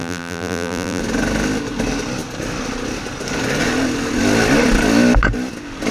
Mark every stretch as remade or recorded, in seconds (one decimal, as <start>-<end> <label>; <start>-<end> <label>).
0.0-1.0 remade; 1.0-5.9 recorded